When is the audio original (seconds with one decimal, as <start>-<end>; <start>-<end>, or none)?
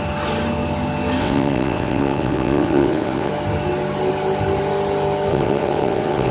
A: 0.0-1.2; 3.3-5.3